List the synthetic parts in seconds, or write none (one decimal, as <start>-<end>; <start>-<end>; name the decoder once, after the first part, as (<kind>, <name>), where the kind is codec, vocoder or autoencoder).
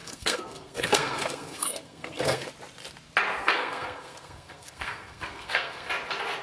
0.0-2.5 (codec, SNAC); 3.4-5.9